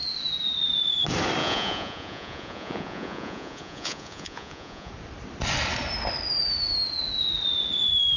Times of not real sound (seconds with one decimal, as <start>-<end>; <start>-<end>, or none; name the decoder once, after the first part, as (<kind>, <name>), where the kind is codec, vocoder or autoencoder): 1.4-4.9 (vocoder, Vocos)